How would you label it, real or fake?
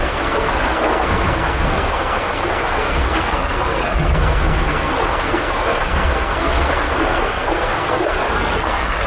fake